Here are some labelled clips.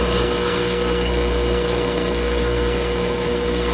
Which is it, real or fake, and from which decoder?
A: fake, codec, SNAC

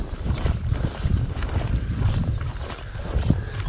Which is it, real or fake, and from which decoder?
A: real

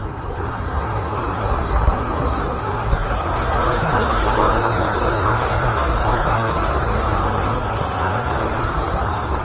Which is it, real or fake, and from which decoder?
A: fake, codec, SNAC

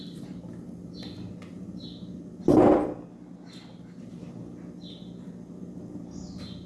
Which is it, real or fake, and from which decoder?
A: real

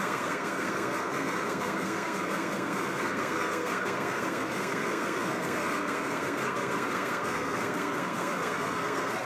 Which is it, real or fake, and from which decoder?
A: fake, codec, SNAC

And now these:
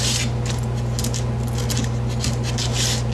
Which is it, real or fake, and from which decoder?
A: real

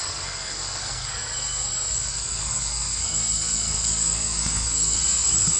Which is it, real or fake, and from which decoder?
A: fake, codec, SNAC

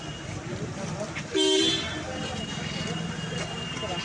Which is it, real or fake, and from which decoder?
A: real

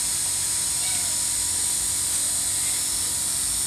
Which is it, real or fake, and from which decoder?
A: real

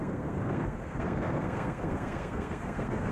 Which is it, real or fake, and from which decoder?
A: fake, codec, SNAC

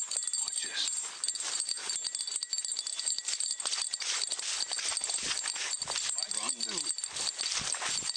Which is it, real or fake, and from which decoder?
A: real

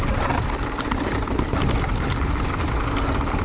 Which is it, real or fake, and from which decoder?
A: real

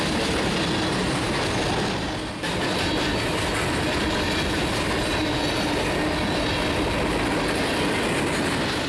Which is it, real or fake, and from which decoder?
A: real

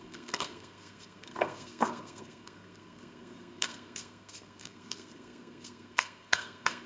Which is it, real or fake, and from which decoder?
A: fake, codec, SNAC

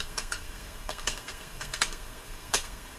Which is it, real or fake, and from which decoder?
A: fake, codec, SNAC